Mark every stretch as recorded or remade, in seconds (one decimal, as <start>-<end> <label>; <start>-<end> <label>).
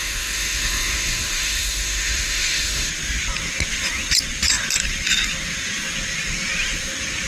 0.0-2.9 remade; 2.9-7.3 recorded